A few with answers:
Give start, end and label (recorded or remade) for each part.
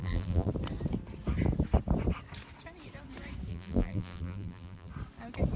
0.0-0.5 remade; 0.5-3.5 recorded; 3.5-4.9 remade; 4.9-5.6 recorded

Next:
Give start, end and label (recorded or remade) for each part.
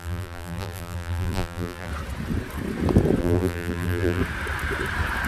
0.0-1.9 remade; 1.9-3.2 recorded; 3.2-4.2 remade; 4.2-5.3 recorded